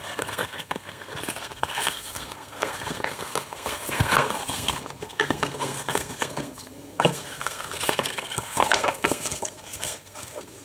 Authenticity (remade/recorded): remade